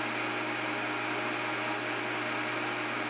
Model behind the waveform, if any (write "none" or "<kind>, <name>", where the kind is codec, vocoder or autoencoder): none